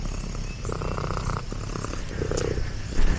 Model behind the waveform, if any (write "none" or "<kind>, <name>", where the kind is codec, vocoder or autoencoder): none